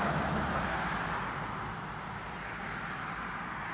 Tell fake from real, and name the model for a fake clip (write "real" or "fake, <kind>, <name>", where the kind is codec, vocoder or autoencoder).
fake, vocoder, BigVGAN v2